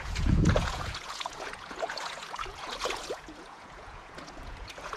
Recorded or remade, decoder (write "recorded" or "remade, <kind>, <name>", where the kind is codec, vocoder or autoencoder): remade, vocoder, Vocos